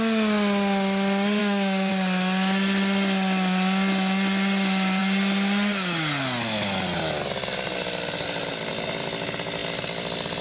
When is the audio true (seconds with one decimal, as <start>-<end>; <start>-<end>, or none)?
0.0-1.4; 1.9-10.4

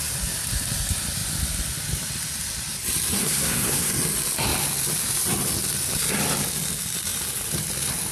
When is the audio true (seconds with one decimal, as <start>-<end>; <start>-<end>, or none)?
0.0-3.2; 3.9-8.1

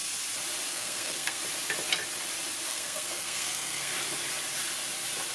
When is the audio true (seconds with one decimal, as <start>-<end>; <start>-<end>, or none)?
0.0-0.7; 1.4-2.7; 3.9-5.3

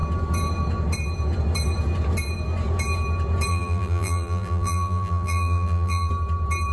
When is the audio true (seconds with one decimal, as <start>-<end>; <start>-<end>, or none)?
0.0-3.5; 6.1-6.7

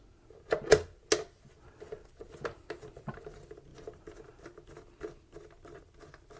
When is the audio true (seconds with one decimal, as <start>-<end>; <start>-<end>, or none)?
0.0-3.7; 4.4-6.4

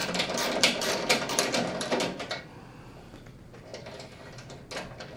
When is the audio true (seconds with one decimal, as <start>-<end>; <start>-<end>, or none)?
2.4-5.2

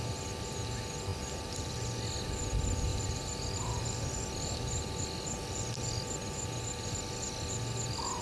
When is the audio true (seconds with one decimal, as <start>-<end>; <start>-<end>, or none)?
0.0-1.1; 2.0-2.9; 6.0-8.2